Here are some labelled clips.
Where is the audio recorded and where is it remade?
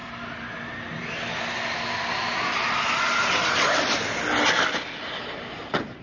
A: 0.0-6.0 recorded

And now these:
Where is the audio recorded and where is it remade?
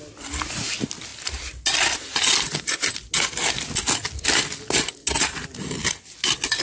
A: 0.0-6.6 recorded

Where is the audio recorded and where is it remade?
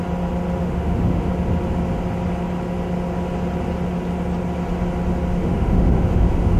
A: 0.0-0.6 recorded; 0.6-1.3 remade; 1.3-5.4 recorded; 5.4-6.6 remade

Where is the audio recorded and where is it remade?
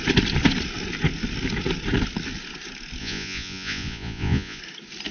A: 0.0-3.0 recorded; 3.0-4.6 remade; 4.6-5.1 recorded